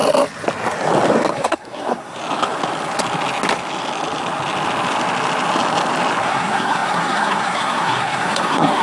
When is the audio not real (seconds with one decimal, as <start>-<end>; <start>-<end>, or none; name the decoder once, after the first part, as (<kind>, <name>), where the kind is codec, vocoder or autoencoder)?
1.3-2.2 (codec, SNAC); 6.2-8.8